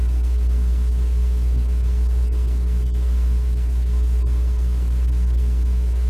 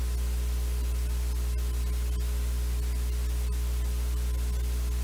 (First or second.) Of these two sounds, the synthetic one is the first